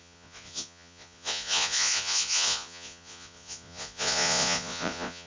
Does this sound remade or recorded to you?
remade